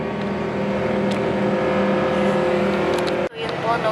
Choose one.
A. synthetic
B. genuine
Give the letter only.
B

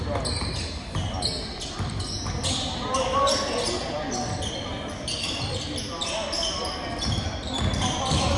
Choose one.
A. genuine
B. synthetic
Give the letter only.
A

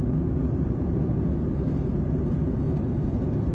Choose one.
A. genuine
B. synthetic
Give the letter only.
A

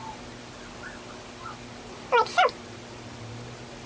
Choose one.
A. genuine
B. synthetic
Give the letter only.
A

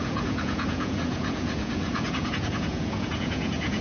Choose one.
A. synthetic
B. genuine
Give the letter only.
A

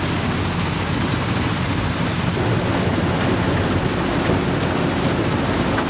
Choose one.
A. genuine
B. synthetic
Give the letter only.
A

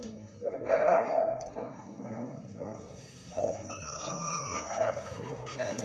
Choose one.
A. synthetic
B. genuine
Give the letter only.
A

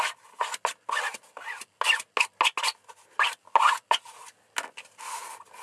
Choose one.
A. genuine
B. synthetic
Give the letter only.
A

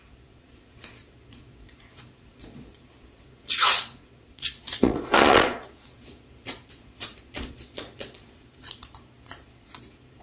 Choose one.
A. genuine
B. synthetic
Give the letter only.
B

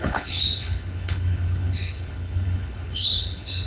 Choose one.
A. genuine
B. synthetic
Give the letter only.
B